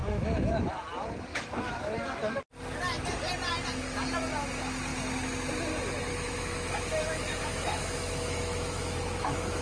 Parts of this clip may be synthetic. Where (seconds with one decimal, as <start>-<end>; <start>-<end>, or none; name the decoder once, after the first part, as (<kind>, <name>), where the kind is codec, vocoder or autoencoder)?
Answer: 0.0-0.7 (autoencoder, DAC-VAE); 1.3-2.4; 6.1-9.6